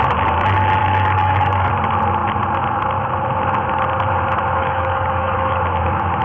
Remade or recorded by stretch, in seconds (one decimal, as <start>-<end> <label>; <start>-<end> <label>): 0.0-0.8 recorded; 0.8-1.7 remade; 1.7-4.6 recorded; 4.6-5.6 remade; 5.6-6.2 recorded